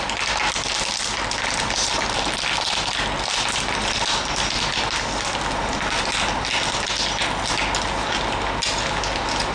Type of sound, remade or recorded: recorded